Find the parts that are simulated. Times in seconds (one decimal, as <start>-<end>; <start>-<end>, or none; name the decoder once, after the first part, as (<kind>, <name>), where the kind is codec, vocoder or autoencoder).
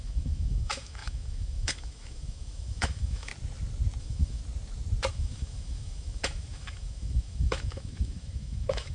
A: 0.0-3.3 (autoencoder, DAC-VAE); 4.0-4.4; 5.1-8.9